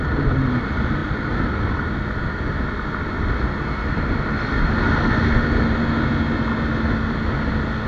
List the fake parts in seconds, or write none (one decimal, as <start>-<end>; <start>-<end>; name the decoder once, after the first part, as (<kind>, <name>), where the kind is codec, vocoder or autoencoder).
none